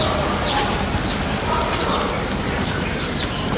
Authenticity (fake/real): fake